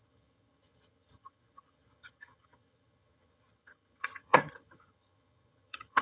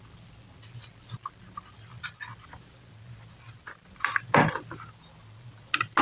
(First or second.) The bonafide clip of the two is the second